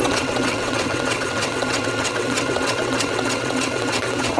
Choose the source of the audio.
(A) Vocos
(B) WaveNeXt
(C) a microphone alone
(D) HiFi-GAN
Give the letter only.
B